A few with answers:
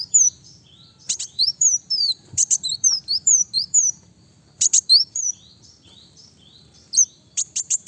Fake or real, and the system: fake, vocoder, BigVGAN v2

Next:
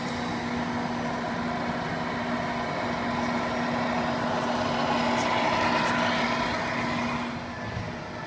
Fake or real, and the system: real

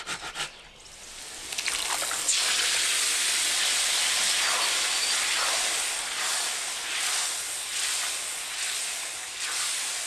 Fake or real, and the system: real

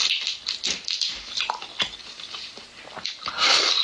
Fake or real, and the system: real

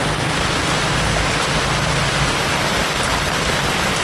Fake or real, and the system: real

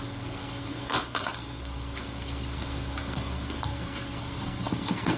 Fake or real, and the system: fake, codec, SNAC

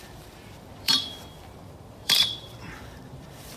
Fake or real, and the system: fake, vocoder, BigVGAN v2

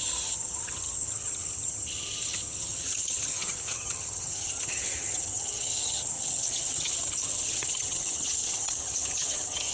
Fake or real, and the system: fake, vocoder, HiFi-GAN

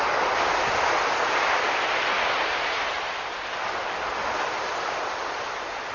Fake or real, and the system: real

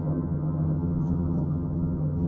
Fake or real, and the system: fake, vocoder, HiFi-GAN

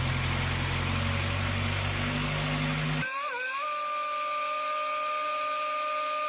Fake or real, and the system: real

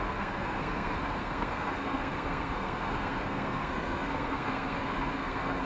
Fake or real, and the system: fake, codec, SNAC